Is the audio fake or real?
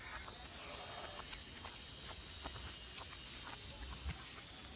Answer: real